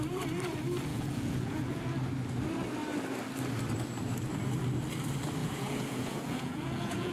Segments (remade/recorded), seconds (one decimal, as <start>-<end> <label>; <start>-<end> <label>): 0.0-0.9 recorded; 0.9-1.8 remade; 1.8-5.4 recorded; 5.4-7.1 remade